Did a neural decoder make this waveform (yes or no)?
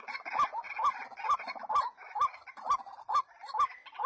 no